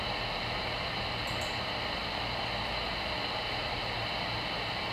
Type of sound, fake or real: real